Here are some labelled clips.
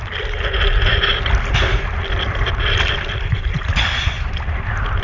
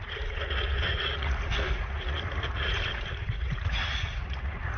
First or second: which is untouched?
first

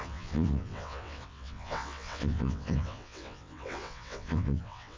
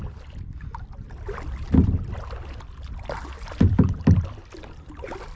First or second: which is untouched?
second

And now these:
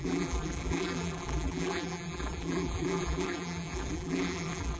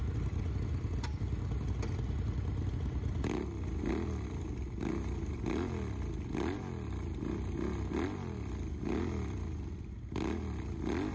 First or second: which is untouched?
second